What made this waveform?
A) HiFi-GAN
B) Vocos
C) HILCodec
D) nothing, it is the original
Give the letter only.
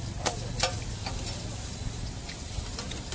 D